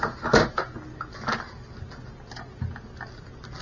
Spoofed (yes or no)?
no